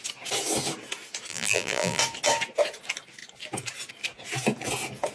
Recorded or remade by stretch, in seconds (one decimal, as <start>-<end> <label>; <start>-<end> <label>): 0.0-1.3 recorded; 1.3-2.0 remade; 2.0-5.1 recorded